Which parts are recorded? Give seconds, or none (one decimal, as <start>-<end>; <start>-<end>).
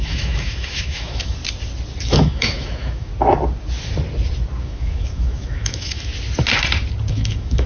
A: 1.4-2.0; 3.1-4.6; 6.1-7.1